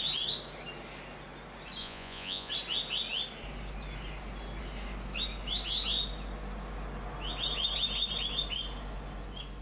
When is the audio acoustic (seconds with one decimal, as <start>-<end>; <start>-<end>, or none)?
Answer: 0.0-1.8; 2.5-9.6